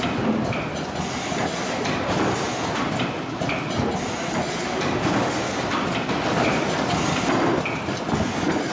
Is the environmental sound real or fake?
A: real